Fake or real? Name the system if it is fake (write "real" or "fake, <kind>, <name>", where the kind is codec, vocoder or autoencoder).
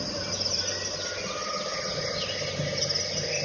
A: real